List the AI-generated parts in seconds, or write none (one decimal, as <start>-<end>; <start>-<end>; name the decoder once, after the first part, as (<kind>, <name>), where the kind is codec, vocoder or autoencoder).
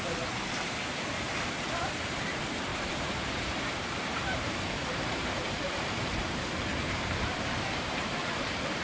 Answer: 2.7-6.2 (vocoder, BigVGAN v2); 6.7-8.8